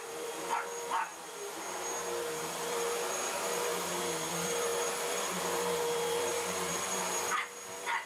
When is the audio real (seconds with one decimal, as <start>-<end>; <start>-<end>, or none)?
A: 1.1-2.4; 3.7-4.3